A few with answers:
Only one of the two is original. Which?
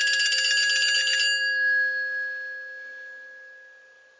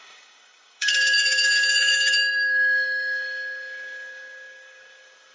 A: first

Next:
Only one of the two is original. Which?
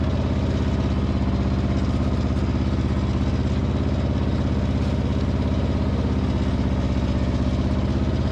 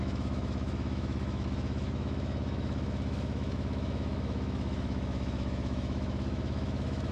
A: first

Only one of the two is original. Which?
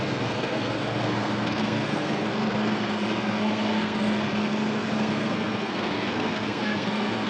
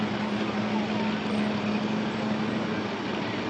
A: second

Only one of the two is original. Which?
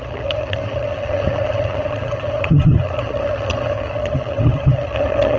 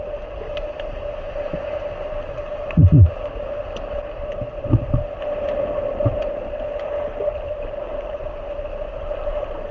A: second